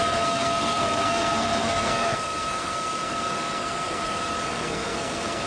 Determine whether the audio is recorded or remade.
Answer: remade